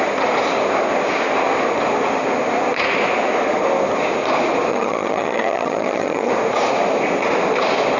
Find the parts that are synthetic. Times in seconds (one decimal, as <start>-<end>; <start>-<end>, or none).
4.7-6.3